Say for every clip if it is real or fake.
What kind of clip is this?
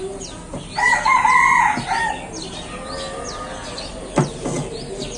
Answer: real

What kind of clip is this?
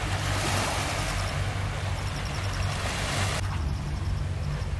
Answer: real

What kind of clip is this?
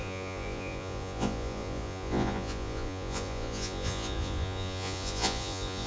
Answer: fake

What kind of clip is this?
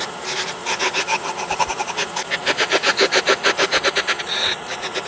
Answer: real